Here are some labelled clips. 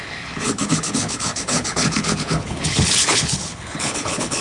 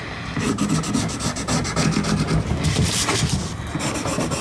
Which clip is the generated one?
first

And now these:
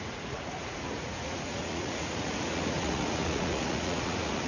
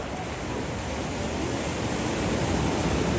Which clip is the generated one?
first